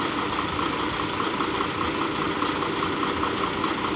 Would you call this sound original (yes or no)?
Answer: yes